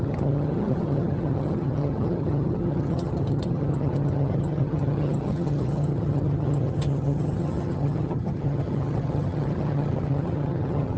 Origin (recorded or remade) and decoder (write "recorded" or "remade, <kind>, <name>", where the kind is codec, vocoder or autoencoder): remade, vocoder, HiFi-GAN